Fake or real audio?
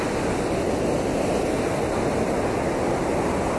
real